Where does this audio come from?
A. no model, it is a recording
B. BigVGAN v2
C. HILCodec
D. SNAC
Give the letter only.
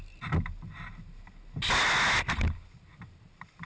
A